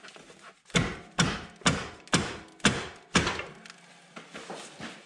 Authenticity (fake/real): real